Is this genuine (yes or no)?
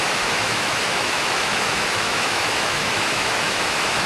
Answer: no